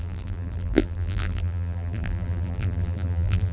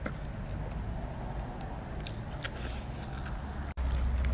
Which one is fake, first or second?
first